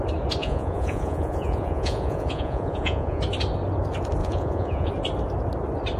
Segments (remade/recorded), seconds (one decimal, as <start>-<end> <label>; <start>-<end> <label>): 0.0-0.4 recorded; 0.4-3.2 remade; 3.2-4.2 recorded; 4.2-4.9 remade; 4.9-6.0 recorded